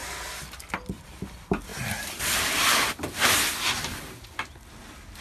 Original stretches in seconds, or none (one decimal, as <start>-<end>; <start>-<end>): 0.0-5.2